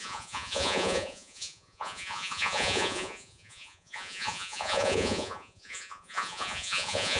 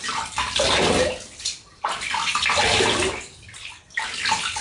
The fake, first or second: first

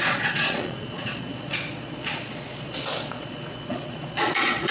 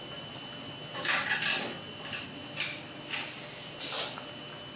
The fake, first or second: first